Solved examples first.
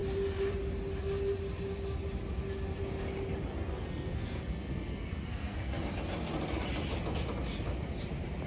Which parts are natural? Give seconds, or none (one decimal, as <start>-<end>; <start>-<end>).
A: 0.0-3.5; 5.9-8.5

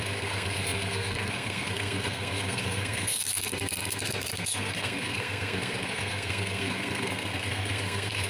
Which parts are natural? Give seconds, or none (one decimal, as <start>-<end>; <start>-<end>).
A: none

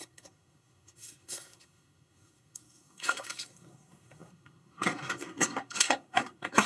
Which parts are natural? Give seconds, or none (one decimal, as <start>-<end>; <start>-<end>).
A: none